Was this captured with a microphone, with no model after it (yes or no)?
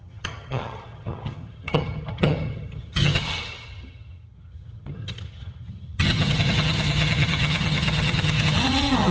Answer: no